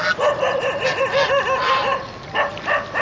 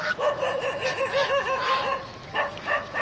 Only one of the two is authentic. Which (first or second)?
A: first